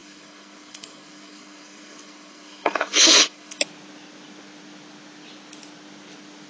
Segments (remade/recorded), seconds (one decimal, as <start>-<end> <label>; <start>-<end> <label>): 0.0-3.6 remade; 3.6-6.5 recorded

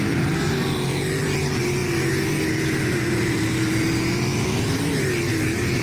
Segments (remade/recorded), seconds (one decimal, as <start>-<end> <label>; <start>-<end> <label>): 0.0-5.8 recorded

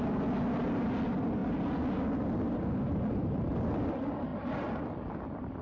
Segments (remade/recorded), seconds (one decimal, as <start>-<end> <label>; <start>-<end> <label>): 0.0-5.6 recorded

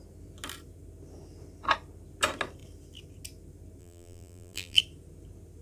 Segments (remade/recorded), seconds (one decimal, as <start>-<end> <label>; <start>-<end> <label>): 0.0-3.8 recorded; 3.8-4.8 remade; 4.8-5.6 recorded